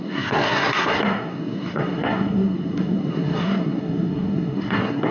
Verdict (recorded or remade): remade